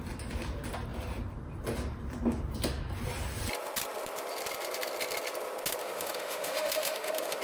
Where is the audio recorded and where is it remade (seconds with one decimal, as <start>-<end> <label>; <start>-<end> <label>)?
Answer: 0.0-5.8 recorded; 5.8-7.4 remade

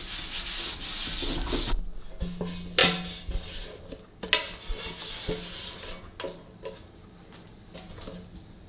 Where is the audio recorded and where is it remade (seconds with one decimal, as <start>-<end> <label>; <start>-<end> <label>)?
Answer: 0.0-8.7 recorded

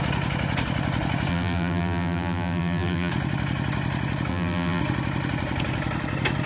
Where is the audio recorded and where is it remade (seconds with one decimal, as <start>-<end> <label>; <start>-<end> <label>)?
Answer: 0.0-1.3 recorded; 1.3-3.1 remade; 3.1-4.3 recorded; 4.3-4.8 remade; 4.8-6.5 recorded

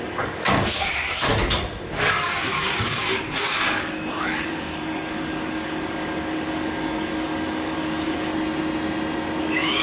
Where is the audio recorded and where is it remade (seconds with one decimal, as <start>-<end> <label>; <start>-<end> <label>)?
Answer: 0.0-1.3 remade; 1.3-1.9 recorded; 1.9-8.3 remade; 8.3-9.4 recorded; 9.4-9.8 remade

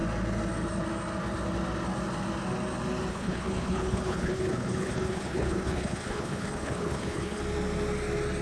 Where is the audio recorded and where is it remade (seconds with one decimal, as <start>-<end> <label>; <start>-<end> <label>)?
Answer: 0.0-3.1 recorded; 3.1-7.4 remade; 7.4-8.4 recorded

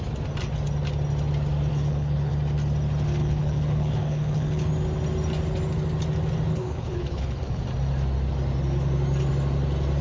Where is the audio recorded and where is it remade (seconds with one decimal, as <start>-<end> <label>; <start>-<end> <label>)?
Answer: 0.0-1.7 recorded; 1.7-2.3 remade; 2.3-3.2 recorded; 3.2-4.7 remade; 4.7-6.5 recorded; 6.5-7.6 remade; 7.6-10.0 recorded